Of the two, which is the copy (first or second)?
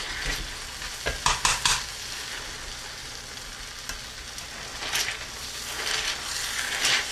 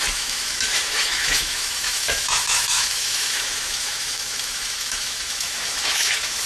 second